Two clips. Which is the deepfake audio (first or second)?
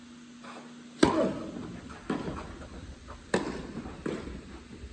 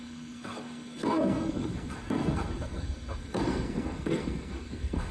second